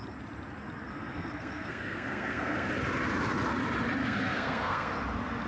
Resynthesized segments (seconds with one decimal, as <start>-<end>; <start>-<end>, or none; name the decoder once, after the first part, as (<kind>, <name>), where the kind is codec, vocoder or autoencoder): 0.9-2.7 (codec, SNAC); 4.0-4.9